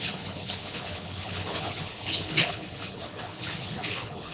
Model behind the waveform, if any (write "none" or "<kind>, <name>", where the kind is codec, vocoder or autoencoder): codec, HILCodec